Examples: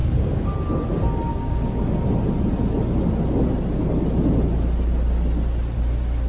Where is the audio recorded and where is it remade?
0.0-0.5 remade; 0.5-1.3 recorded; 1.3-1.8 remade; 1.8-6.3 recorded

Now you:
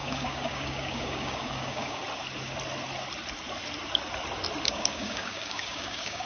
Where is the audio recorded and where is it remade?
0.0-2.0 remade; 2.0-4.6 recorded; 4.6-6.3 remade

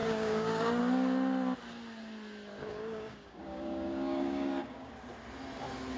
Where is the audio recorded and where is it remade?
0.0-0.8 remade; 0.8-2.6 recorded; 2.6-4.9 remade; 4.9-6.0 recorded

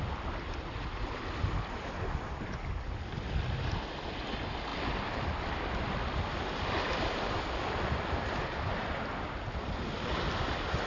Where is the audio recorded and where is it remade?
0.0-10.9 recorded

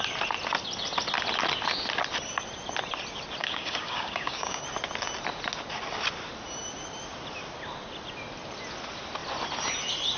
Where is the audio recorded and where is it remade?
0.0-3.4 recorded; 3.4-4.6 remade; 4.6-10.2 recorded

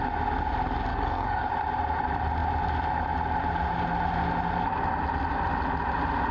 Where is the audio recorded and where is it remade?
0.0-0.9 recorded; 0.9-1.5 remade; 1.5-6.3 recorded

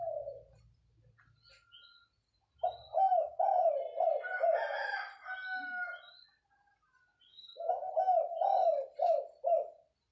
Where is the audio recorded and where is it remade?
0.0-3.1 recorded; 3.1-3.7 remade; 3.7-7.3 recorded; 7.3-7.9 remade; 7.9-10.1 recorded

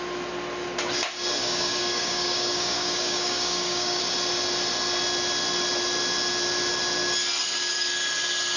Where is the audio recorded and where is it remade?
0.0-1.4 recorded; 1.4-4.0 remade; 4.0-8.6 recorded